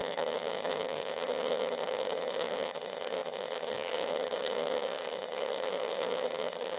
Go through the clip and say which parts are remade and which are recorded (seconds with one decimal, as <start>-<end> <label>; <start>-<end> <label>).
0.0-6.8 remade